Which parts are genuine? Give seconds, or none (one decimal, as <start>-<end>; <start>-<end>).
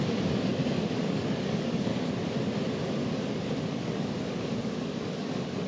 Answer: 1.9-3.8